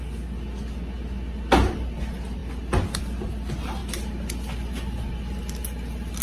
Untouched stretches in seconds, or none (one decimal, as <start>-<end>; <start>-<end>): 0.0-6.2